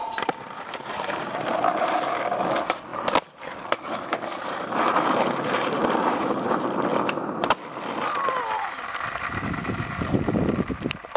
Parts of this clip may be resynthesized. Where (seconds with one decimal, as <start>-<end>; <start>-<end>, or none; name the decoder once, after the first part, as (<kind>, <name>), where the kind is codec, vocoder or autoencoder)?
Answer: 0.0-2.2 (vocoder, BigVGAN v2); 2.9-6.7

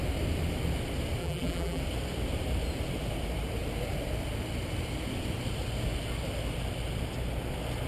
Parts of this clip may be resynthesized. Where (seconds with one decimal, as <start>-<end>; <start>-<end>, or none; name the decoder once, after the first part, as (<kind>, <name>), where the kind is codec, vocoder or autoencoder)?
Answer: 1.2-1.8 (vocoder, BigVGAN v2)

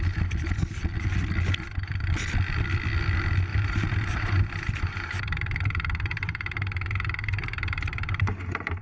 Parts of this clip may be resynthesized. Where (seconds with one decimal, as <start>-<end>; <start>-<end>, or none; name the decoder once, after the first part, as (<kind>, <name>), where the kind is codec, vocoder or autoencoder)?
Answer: 3.5-8.8 (vocoder, BigVGAN v2)

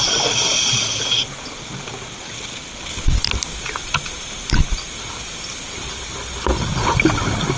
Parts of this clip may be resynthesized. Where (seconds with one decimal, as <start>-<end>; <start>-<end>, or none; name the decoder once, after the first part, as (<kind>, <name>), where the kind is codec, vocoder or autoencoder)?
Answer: 3.8-4.9 (vocoder, BigVGAN v2)